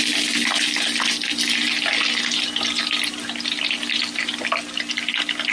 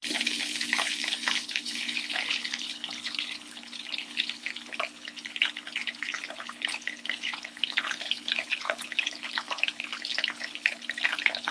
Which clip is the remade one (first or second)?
second